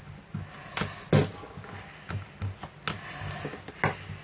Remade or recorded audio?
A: recorded